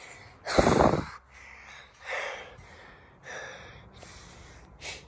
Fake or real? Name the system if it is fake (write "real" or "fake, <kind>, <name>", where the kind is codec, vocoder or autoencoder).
real